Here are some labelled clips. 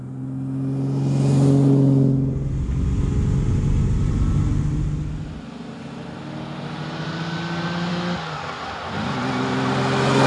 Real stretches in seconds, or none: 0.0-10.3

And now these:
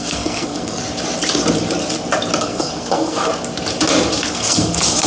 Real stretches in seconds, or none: 0.8-2.4; 3.3-4.3

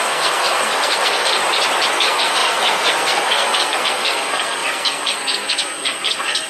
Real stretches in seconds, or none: 1.4-1.9

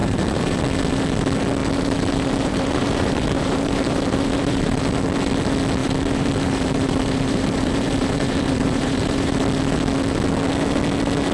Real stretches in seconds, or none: 0.6-1.6; 4.8-5.8; 9.3-11.3

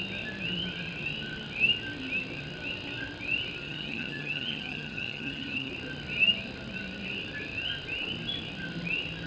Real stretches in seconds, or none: 0.0-3.6; 5.7-9.3